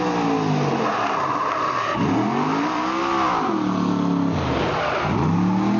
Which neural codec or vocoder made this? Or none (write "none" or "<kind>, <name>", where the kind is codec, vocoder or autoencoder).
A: none